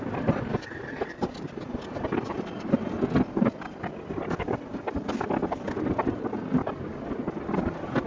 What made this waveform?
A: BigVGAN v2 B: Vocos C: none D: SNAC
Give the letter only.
C